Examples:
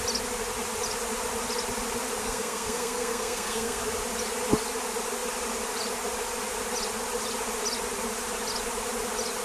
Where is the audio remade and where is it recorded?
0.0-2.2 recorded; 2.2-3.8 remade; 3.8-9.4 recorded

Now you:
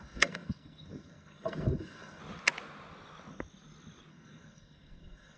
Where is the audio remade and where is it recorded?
0.0-2.2 remade; 2.2-4.1 recorded; 4.1-5.4 remade